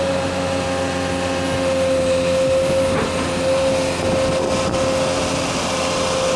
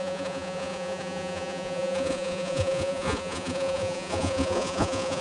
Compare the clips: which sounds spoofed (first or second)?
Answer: second